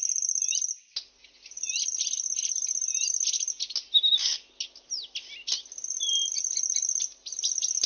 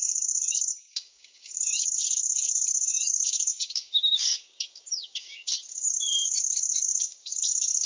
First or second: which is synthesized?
second